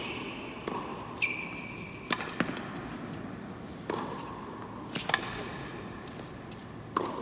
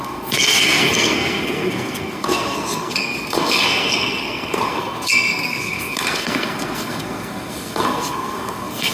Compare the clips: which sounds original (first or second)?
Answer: first